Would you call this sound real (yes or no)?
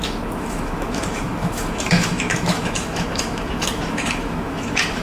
no